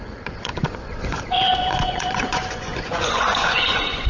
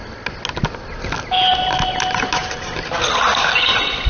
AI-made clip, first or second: first